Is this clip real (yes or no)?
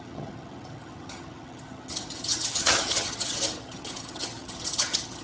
no